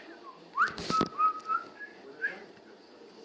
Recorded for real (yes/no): yes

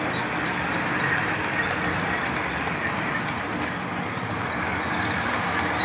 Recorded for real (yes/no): yes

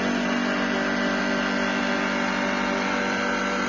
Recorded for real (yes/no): yes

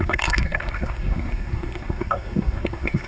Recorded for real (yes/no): no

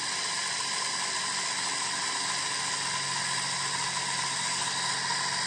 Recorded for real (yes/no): yes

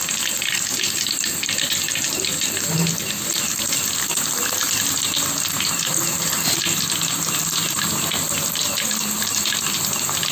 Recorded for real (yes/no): yes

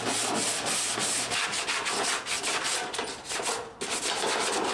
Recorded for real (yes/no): yes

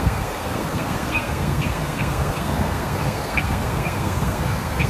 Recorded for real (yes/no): no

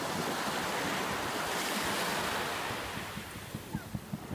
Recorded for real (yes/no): yes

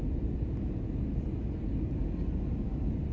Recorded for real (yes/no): yes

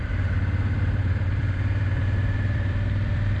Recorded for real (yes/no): no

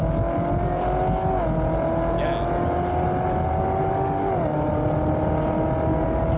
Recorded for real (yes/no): yes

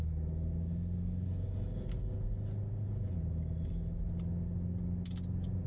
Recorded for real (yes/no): yes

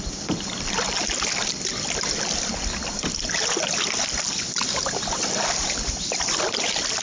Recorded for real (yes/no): yes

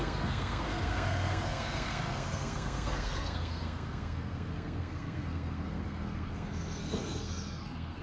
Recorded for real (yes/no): no